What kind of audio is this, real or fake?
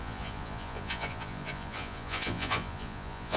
fake